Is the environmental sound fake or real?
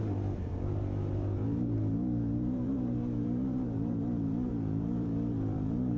fake